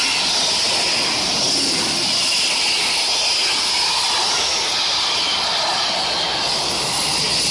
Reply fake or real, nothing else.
real